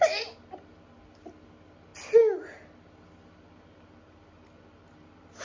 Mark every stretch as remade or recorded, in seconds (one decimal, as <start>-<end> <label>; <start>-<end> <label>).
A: 0.0-5.4 recorded